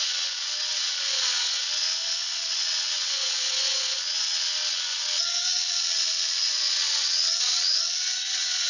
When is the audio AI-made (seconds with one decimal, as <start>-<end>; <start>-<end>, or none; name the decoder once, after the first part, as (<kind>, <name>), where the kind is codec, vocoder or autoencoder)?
0.0-8.7 (vocoder, WaveNeXt)